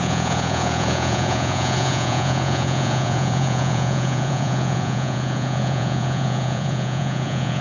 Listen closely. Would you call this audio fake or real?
fake